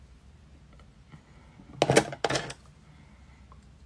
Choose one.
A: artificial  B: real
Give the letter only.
B